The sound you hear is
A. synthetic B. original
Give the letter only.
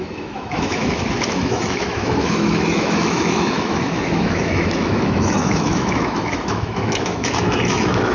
A